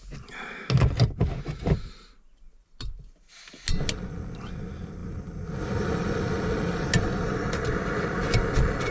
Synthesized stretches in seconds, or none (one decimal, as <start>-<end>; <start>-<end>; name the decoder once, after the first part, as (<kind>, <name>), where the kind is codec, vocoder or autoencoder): none